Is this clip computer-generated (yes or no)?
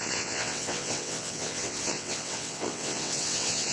yes